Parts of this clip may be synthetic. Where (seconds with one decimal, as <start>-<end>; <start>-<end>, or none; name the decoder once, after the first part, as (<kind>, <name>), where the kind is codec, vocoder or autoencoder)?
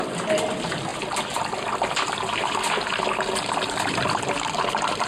none